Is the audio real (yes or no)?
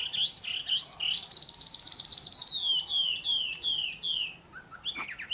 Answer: yes